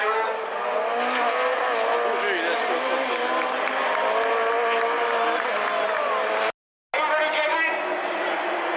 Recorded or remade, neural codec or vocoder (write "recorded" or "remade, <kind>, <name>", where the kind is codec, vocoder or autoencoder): recorded